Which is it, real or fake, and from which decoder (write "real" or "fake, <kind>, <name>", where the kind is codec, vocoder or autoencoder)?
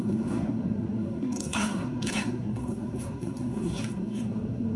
fake, codec, SNAC